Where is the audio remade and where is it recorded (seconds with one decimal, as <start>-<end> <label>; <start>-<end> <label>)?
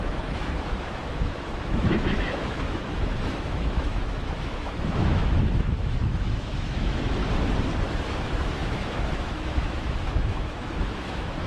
0.0-7.2 remade; 7.2-8.1 recorded; 8.1-11.5 remade